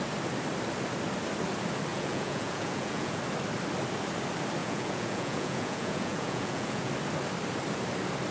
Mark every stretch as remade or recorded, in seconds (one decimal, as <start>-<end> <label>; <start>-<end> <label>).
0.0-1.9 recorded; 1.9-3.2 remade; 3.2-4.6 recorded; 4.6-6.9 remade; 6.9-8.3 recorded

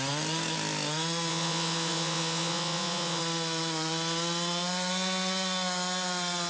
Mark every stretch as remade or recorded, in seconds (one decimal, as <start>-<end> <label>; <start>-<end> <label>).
0.0-1.3 recorded; 1.3-3.2 remade; 3.2-6.5 recorded

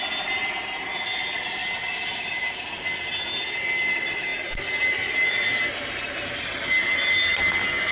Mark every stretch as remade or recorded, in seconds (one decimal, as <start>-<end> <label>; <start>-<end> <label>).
0.0-7.9 recorded